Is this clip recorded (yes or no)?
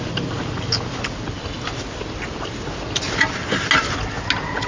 yes